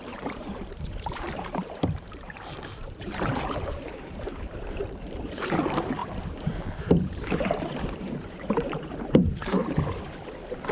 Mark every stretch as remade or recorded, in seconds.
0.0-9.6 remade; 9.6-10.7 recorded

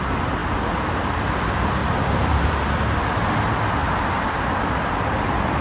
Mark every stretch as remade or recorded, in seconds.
0.0-1.8 recorded; 1.8-2.5 remade; 2.5-5.6 recorded

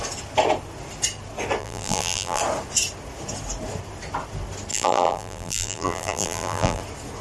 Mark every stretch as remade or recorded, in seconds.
0.0-1.6 recorded; 1.6-2.4 remade; 2.4-4.7 recorded; 4.7-6.8 remade; 6.8-7.2 recorded

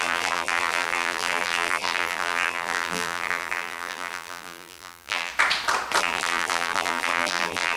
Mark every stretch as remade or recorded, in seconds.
0.0-5.3 remade; 5.3-6.0 recorded; 6.0-7.8 remade

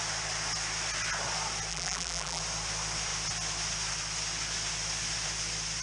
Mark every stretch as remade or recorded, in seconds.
0.0-1.7 recorded; 1.7-2.4 remade; 2.4-5.8 recorded